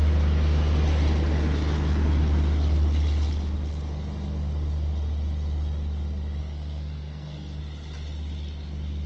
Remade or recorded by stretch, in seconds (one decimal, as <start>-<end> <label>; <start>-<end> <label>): 0.0-6.4 recorded; 6.4-7.6 remade; 7.6-9.1 recorded